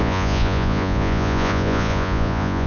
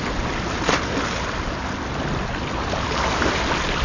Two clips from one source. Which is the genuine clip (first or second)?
second